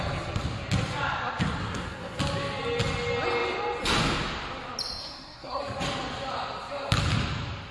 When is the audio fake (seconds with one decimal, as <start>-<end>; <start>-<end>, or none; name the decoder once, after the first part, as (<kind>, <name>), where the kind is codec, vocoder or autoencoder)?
1.6-2.2 (codec, SNAC); 5.0-5.6